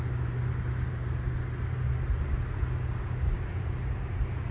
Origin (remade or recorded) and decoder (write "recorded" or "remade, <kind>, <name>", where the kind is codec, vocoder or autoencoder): recorded